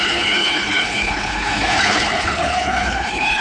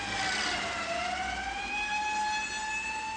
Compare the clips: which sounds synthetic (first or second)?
first